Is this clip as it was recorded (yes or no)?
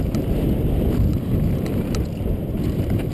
yes